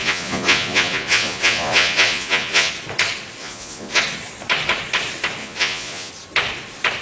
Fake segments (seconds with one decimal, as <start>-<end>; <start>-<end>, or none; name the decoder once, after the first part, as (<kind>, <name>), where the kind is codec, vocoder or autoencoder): 0.0-2.7 (vocoder, Vocos); 3.4-4.0; 5.4-6.1